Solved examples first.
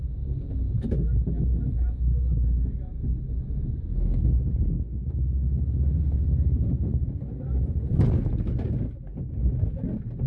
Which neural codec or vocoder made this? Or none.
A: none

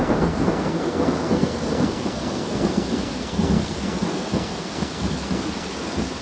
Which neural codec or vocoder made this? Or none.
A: codec, SNAC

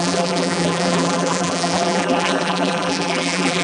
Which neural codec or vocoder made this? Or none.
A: vocoder, BigVGAN v2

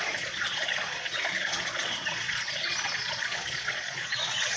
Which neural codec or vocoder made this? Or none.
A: vocoder, Vocos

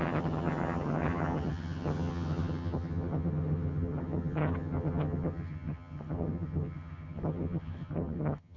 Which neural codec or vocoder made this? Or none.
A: vocoder, HiFi-GAN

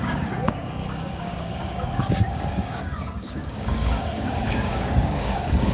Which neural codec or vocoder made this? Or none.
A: codec, DAC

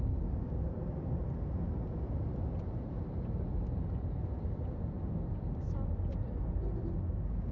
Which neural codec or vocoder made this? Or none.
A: none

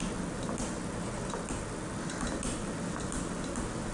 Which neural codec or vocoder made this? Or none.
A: none